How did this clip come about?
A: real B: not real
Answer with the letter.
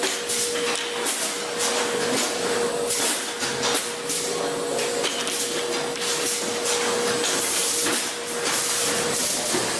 A